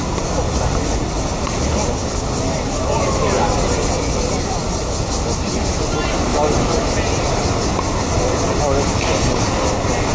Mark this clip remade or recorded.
recorded